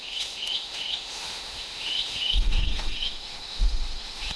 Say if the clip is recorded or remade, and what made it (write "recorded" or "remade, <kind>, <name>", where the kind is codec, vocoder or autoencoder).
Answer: remade, autoencoder, DAC-VAE